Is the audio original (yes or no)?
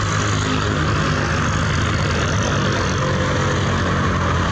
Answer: yes